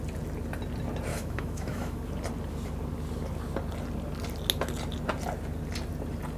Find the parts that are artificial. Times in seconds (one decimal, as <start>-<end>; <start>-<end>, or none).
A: 1.1-2.0